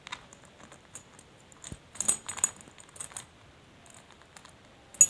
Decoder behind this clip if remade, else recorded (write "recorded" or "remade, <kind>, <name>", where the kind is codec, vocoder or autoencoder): recorded